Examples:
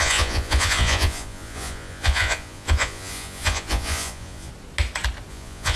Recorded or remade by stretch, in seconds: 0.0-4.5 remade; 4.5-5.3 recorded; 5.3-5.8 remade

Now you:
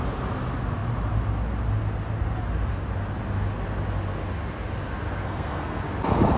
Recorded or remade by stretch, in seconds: 0.0-5.2 recorded; 5.2-5.8 remade; 5.8-6.4 recorded

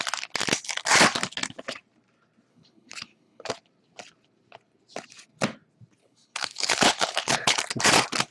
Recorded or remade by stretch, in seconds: 0.0-2.5 recorded; 2.5-3.5 remade; 3.5-6.0 recorded; 6.0-7.6 remade; 7.6-8.3 recorded

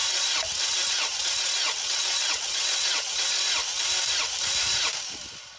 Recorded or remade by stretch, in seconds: 0.0-3.4 remade; 3.4-5.6 recorded

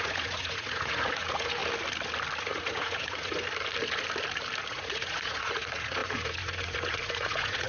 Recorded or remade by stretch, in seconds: 0.0-1.6 remade; 1.6-2.4 recorded; 2.4-3.4 remade; 3.4-4.7 recorded; 4.7-7.7 remade